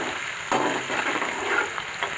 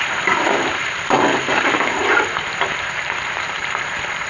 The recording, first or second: first